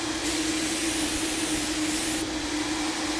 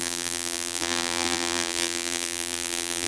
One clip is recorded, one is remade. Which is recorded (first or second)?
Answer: first